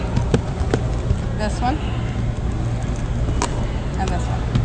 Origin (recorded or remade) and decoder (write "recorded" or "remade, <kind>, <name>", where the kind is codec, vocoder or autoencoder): recorded